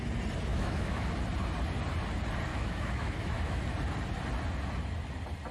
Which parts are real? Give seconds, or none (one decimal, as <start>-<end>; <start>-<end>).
0.0-0.5; 1.1-2.5; 3.6-5.5